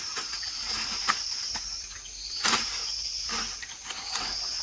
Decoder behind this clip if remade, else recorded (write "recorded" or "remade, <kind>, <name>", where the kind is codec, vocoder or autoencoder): recorded